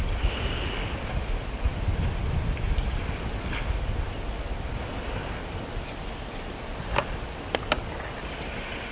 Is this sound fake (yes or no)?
no